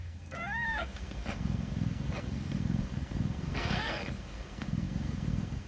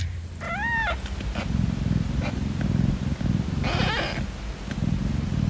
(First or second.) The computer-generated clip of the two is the first